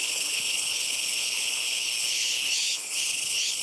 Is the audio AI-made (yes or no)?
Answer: yes